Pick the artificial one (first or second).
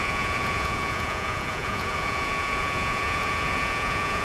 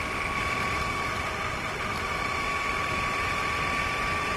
first